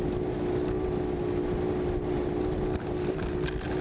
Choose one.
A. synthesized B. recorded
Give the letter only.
B